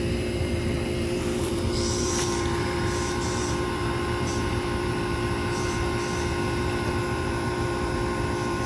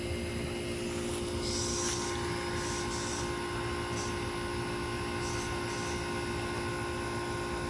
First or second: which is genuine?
second